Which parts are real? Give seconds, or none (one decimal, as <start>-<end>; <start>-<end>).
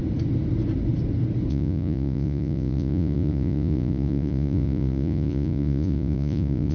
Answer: 0.0-1.5